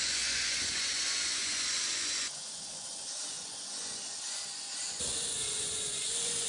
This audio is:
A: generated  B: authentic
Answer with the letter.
A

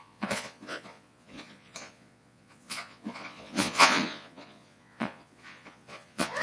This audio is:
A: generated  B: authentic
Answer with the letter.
A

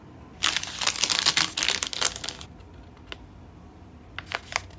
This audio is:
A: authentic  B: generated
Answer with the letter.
A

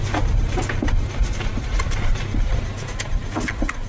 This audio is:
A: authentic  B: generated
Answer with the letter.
A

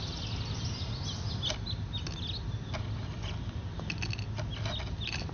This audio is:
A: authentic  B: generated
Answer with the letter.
A